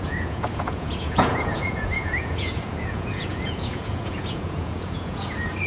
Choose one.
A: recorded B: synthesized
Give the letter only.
B